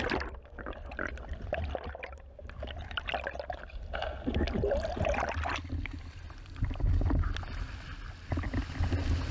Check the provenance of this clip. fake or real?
real